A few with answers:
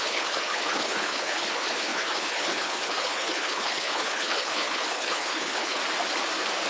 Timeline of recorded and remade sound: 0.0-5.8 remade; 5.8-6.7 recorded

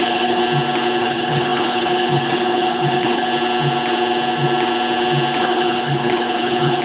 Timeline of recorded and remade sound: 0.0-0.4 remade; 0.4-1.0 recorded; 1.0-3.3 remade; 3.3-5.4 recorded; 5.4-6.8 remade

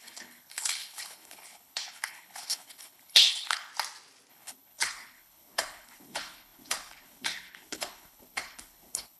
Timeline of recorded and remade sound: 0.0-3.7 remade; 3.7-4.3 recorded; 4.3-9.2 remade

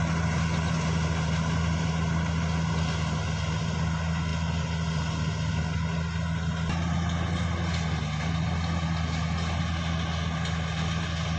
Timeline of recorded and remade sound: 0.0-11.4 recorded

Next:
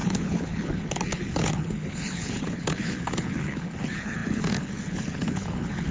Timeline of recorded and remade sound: 0.0-5.9 remade

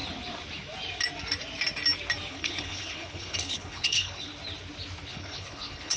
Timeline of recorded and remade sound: 0.0-2.3 recorded; 2.3-4.3 remade; 4.3-5.1 recorded; 5.1-6.0 remade